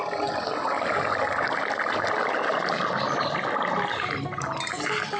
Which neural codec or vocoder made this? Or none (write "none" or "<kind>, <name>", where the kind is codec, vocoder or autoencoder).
none